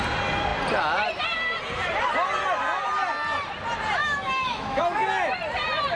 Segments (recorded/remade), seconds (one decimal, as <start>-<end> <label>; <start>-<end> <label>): 0.0-4.0 recorded; 4.0-4.8 remade; 4.8-6.0 recorded

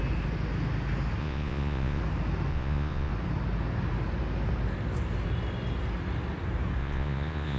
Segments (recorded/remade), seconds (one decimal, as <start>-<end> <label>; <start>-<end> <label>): 0.0-1.2 recorded; 1.2-2.0 remade; 2.0-2.5 recorded; 2.5-3.1 remade; 3.1-6.8 recorded; 6.8-7.6 remade

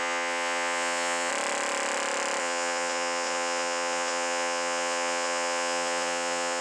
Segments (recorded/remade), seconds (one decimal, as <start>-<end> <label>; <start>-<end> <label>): 0.0-1.3 remade; 1.3-2.4 recorded; 2.4-6.6 remade